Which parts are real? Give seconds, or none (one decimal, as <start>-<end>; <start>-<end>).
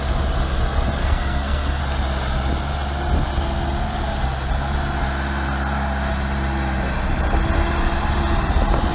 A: 0.0-1.0; 1.8-8.9